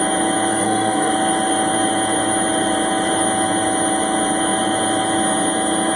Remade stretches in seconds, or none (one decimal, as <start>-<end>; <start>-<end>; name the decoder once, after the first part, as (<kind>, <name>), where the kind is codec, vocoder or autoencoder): 0.5-1.1 (codec, SNAC)